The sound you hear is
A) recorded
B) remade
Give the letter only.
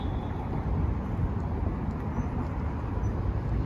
A